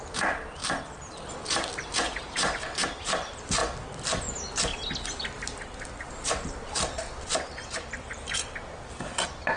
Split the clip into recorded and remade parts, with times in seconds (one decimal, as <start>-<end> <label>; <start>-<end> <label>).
0.0-0.6 remade; 0.6-1.3 recorded; 1.3-3.6 remade; 3.6-6.0 recorded; 6.0-8.4 remade; 8.4-9.6 recorded